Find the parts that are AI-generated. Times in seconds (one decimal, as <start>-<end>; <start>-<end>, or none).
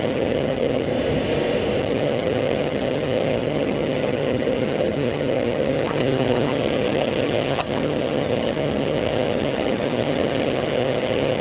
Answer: 0.0-0.9; 1.8-11.4